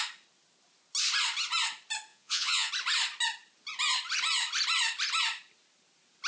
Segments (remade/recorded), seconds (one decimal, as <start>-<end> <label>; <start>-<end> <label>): 0.0-2.1 recorded; 2.1-2.7 remade; 2.7-6.3 recorded